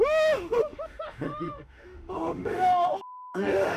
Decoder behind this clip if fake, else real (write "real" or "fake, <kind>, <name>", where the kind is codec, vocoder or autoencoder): fake, autoencoder, DAC-VAE